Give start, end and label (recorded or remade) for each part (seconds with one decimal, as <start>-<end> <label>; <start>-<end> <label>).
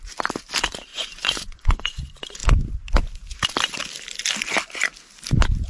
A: 0.0-0.9 recorded; 0.9-2.0 remade; 2.0-5.7 recorded